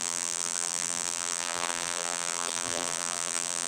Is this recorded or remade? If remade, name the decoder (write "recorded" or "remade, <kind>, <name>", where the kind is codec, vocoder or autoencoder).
remade, vocoder, BigVGAN v2